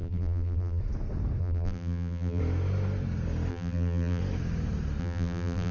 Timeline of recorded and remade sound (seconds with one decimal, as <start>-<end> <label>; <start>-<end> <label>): 0.0-0.8 remade; 0.8-1.4 recorded; 1.4-2.4 remade; 2.4-3.5 recorded; 3.5-4.2 remade; 4.2-5.0 recorded; 5.0-5.7 remade